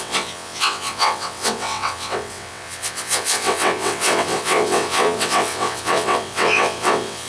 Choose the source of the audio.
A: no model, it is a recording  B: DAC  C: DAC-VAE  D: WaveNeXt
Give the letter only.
D